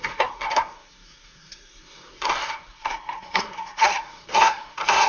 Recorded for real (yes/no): no